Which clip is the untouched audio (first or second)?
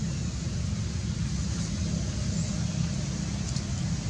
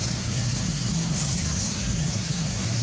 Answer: first